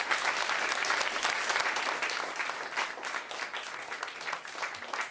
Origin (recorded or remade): recorded